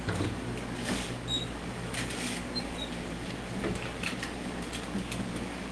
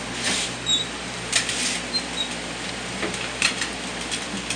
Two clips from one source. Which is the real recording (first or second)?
second